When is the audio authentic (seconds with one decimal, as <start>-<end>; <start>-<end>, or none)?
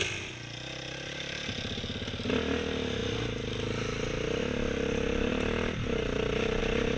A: 0.0-7.0